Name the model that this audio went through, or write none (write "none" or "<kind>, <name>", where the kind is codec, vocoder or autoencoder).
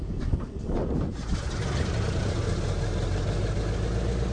none